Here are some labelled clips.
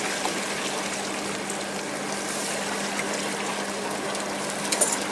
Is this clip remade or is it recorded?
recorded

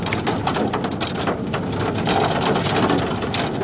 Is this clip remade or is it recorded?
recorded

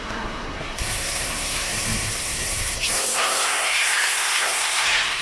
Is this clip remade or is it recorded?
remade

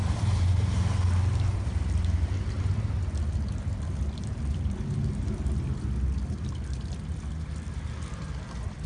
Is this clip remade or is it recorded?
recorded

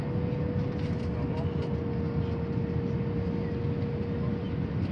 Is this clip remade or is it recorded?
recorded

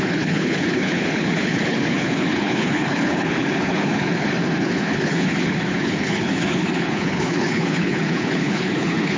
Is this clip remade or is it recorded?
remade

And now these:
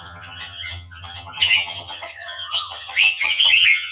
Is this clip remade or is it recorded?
remade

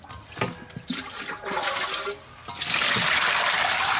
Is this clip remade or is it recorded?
recorded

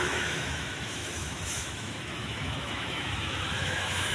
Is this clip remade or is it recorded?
remade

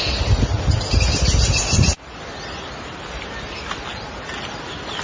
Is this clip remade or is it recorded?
recorded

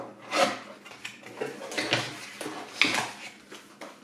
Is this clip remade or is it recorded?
recorded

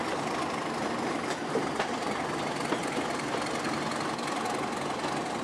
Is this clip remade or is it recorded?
recorded